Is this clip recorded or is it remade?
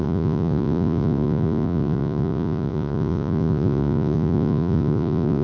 remade